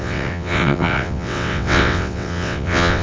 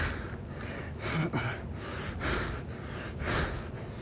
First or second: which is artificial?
first